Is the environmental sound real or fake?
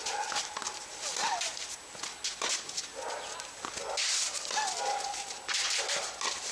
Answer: real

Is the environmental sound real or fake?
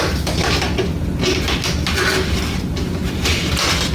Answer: real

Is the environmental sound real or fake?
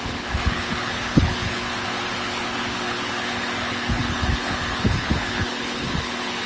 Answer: fake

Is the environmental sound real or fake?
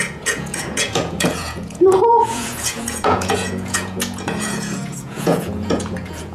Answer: fake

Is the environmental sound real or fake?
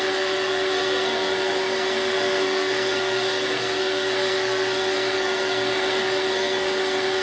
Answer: fake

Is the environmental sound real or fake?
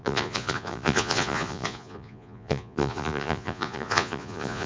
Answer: fake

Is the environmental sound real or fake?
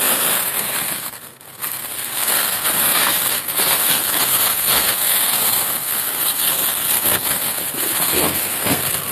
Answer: fake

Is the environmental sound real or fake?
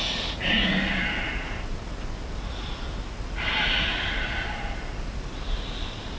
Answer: real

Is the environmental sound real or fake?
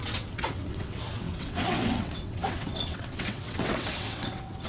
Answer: fake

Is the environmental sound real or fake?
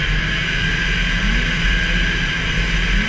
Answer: real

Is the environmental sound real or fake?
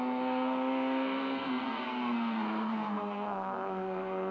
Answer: fake